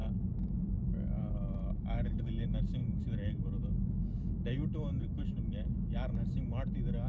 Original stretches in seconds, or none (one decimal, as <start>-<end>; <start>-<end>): none